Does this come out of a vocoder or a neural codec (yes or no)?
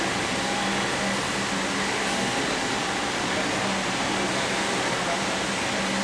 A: no